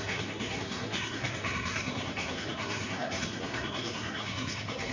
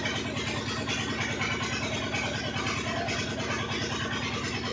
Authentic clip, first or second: second